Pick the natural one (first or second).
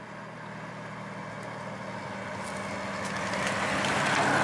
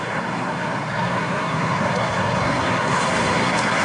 first